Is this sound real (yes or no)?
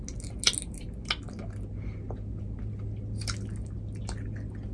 yes